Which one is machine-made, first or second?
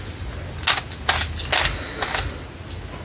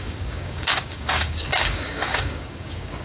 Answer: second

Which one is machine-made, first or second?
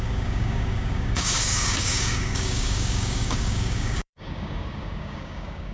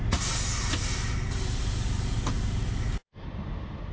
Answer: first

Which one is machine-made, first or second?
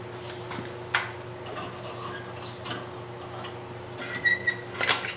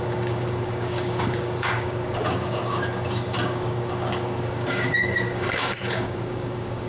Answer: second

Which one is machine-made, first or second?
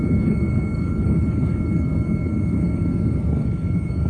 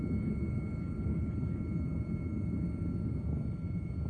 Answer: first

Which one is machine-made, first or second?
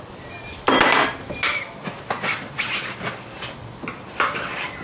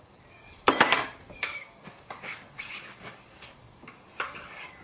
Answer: second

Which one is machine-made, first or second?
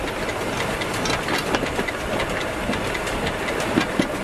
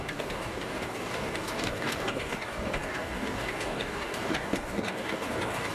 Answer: second